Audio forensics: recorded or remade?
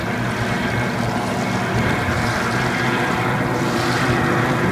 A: recorded